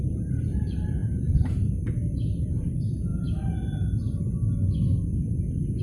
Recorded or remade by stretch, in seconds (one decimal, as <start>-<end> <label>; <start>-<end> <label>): 0.0-3.1 remade; 3.1-5.8 recorded